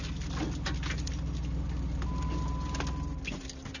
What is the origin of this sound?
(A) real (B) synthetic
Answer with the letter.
A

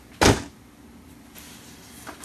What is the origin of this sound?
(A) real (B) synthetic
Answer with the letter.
A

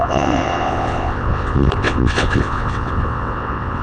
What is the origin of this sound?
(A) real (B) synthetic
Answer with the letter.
B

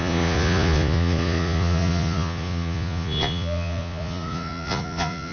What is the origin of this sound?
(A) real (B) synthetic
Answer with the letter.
B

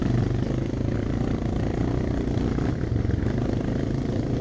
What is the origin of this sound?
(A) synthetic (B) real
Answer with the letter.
A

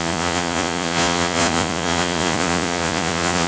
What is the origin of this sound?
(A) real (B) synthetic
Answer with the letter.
B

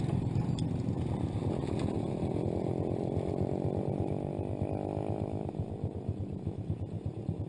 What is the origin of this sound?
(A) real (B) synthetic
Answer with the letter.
A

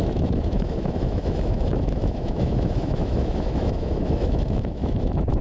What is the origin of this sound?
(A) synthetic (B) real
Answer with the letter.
A